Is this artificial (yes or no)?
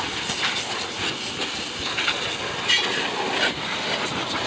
no